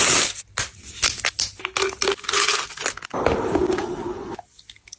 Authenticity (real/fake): real